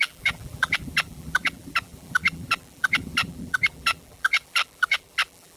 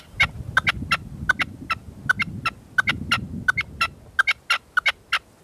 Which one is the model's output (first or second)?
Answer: first